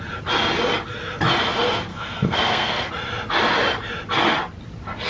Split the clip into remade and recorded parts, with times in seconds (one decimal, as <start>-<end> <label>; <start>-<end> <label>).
0.0-1.9 recorded; 1.9-2.9 remade; 2.9-5.1 recorded